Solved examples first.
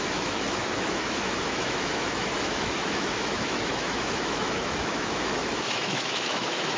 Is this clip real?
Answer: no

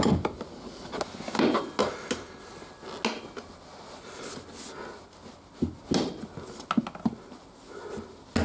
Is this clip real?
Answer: yes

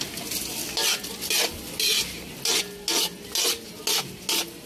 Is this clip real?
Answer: yes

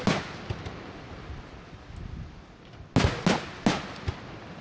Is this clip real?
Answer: yes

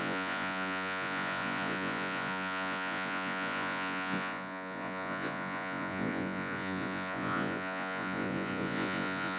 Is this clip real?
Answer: no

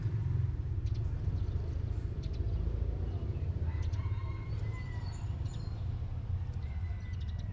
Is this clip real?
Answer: yes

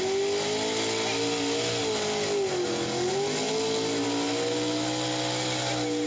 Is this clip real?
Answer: yes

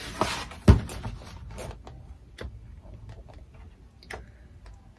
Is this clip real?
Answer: yes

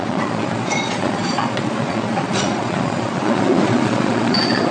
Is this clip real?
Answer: no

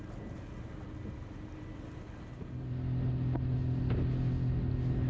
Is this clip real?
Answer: yes